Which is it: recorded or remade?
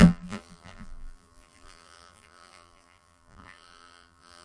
remade